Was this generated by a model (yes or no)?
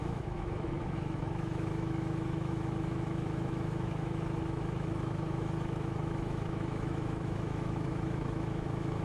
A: yes